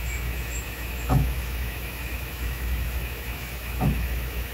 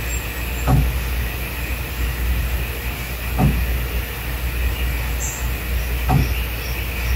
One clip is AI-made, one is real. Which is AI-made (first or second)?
first